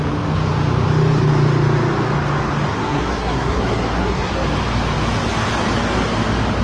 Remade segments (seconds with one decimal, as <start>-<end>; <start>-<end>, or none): 2.7-4.3